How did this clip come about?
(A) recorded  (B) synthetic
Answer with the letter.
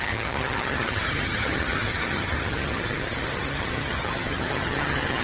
B